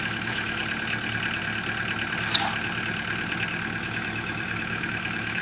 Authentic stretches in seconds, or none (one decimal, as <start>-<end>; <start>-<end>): 0.6-3.8